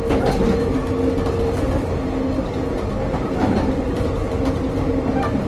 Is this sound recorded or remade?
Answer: recorded